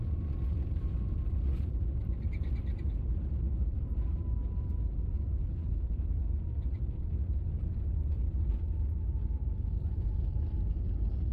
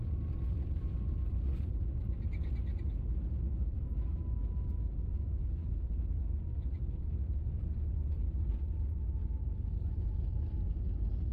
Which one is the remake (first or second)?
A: first